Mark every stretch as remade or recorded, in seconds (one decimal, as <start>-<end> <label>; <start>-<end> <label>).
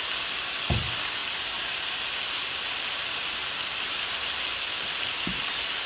0.0-5.9 recorded